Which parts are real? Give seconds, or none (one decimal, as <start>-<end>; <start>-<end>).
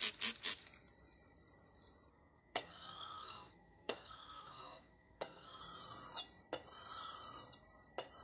0.0-2.1; 5.6-8.2